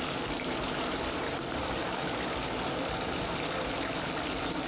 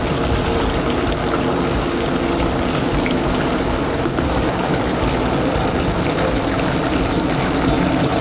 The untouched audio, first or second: second